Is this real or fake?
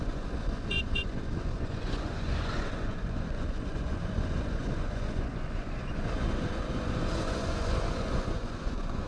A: fake